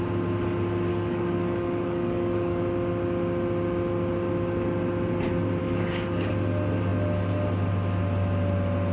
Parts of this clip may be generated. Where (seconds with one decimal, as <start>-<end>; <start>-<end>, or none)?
0.9-2.6; 5.6-6.3